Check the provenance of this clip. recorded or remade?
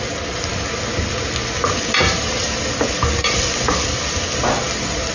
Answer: recorded